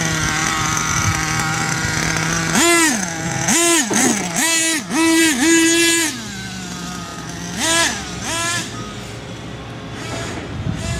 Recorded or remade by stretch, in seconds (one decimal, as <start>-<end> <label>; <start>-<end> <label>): 0.0-11.0 recorded